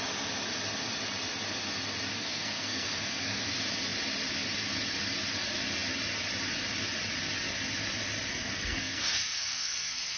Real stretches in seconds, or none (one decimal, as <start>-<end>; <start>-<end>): 0.0-2.1; 3.5-8.3